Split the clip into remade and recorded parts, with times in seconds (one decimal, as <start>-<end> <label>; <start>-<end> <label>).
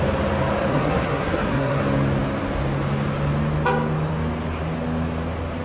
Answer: 0.0-0.7 recorded; 0.7-1.8 remade; 1.8-5.6 recorded